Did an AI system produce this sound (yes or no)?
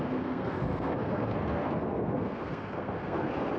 yes